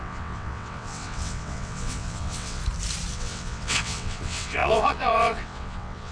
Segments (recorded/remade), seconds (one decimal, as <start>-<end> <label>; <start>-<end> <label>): 0.0-2.6 remade; 2.6-3.1 recorded; 3.1-6.1 remade